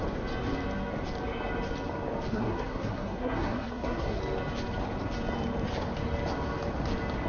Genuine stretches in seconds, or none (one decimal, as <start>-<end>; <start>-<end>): 0.0-2.3; 4.2-7.3